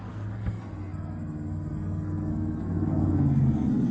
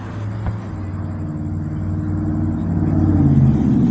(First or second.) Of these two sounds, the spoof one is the first